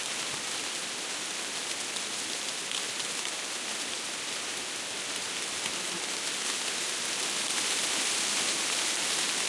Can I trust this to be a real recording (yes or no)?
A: yes